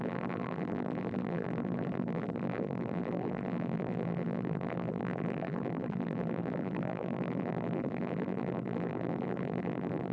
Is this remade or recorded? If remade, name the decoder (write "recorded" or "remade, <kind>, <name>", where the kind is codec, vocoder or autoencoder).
remade, vocoder, BigVGAN v2